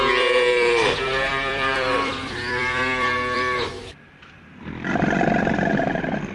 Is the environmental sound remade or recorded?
remade